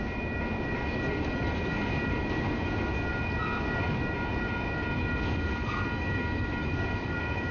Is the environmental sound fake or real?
real